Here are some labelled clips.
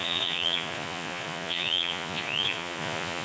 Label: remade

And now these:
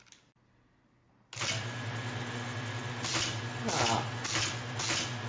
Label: recorded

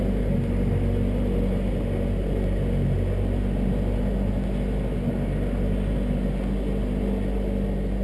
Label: recorded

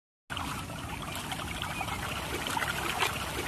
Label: recorded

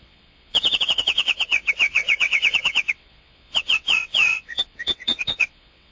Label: remade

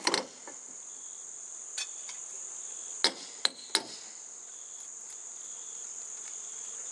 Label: recorded